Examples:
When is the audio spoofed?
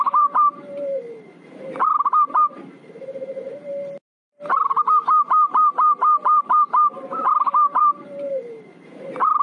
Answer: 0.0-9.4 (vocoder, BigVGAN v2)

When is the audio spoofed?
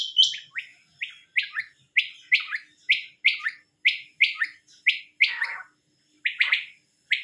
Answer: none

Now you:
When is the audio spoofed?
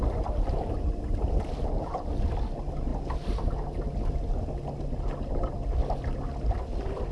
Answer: none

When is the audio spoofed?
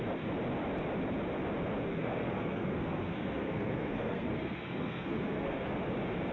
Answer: 1.9-5.7 (codec, SNAC)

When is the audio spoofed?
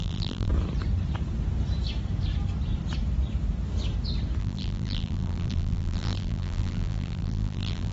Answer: 0.0-0.5 (vocoder, BigVGAN v2); 4.4-7.9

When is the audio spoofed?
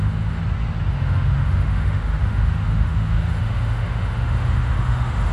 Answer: 0.0-0.4 (autoencoder, DAC-VAE); 0.9-5.3